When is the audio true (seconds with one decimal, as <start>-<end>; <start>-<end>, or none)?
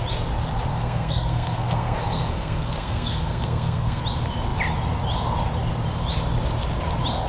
0.0-0.7; 4.0-7.3